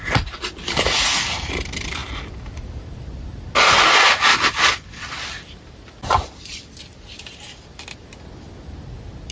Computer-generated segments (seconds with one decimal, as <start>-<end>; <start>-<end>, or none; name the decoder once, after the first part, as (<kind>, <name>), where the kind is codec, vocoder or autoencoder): none

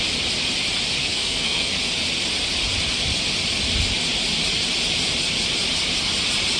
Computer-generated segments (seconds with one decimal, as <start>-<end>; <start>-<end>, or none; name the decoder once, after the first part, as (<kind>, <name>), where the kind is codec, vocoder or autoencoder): 1.0-1.8 (codec, SNAC)

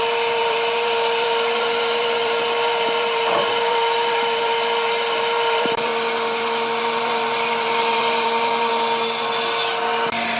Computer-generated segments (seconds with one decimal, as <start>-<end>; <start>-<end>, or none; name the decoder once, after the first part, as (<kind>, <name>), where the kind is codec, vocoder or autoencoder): 0.0-5.9 (vocoder, BigVGAN v2); 6.8-8.7

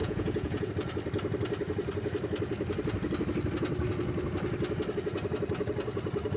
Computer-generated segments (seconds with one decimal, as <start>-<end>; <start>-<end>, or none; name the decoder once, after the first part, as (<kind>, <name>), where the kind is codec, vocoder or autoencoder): 0.0-0.7 (vocoder, Vocos)

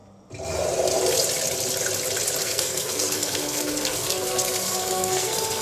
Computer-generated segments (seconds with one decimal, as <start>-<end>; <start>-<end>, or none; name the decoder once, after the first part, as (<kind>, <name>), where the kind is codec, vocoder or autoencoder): 2.4-5.6 (codec, SNAC)

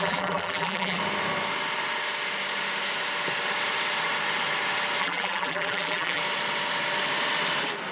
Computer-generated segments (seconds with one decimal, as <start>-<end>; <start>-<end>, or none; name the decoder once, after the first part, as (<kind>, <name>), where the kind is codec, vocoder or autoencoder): 0.0-1.0 (vocoder, BigVGAN v2); 5.0-6.2

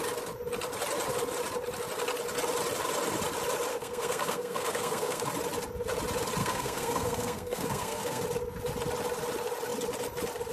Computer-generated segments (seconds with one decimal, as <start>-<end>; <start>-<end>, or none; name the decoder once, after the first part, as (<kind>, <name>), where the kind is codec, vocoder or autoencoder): 3.7-5.2 (codec, SNAC); 6.4-8.2

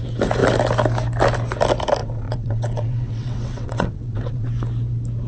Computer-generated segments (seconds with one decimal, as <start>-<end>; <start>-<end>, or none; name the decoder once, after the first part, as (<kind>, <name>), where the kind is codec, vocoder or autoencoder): 2.0-4.5 (vocoder, WaveNeXt)